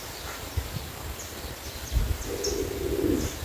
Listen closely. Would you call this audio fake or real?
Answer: real